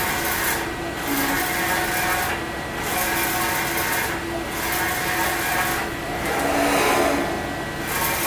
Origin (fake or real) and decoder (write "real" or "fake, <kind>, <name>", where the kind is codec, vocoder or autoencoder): real